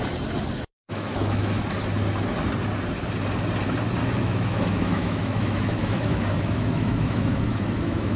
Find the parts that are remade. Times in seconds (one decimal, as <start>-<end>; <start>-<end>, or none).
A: 0.7-1.6; 4.0-8.2